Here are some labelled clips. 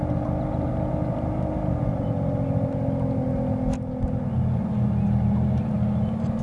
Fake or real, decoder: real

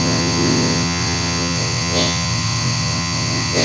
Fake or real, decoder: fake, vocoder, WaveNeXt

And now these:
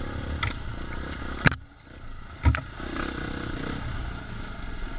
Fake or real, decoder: real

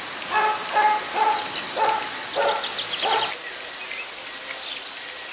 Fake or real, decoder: real